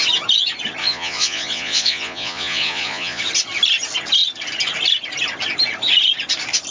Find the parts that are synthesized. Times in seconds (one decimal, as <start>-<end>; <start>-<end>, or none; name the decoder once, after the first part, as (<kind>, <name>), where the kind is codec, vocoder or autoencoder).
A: 0.8-3.2 (vocoder, Vocos)